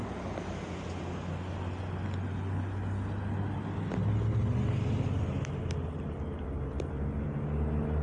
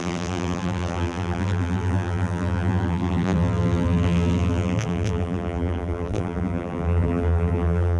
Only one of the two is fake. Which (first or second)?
second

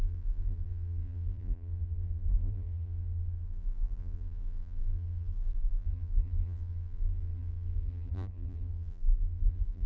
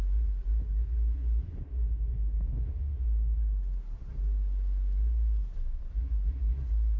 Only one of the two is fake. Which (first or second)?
first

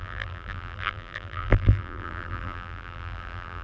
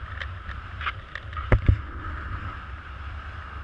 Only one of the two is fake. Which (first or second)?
first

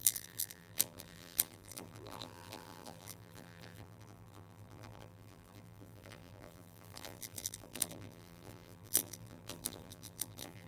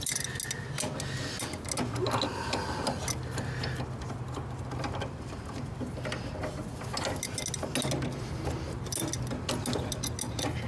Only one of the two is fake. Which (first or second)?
first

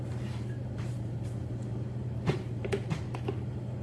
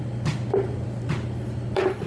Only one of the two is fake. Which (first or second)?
first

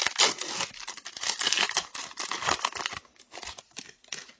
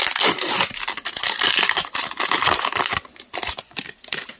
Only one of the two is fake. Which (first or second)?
second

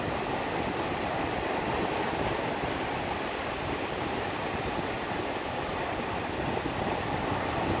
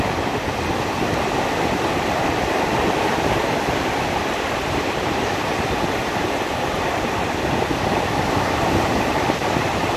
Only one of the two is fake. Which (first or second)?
second